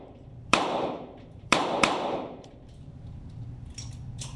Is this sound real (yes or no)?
no